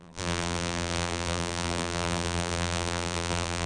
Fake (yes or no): yes